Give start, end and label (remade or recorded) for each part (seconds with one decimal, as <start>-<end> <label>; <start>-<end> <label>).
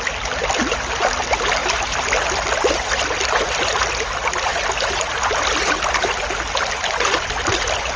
0.0-8.0 recorded